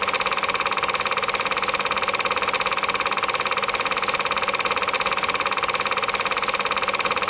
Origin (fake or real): real